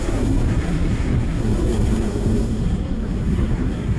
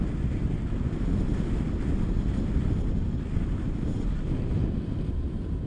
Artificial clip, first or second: first